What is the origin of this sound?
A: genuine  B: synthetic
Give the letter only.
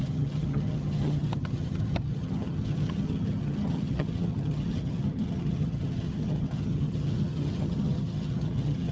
B